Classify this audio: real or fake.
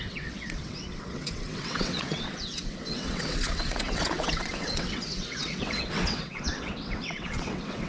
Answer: fake